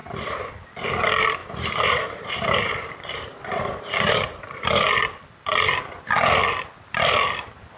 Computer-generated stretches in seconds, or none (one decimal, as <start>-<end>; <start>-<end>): 0.0-0.5; 1.4-4.9